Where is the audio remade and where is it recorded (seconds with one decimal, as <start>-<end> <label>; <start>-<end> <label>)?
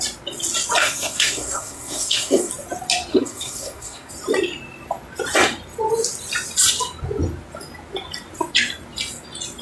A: 0.0-0.8 recorded; 0.8-2.5 remade; 2.5-3.1 recorded; 3.1-4.1 remade; 4.1-9.6 recorded